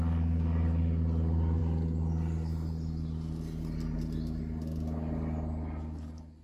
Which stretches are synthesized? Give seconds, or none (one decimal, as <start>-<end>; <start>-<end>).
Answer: none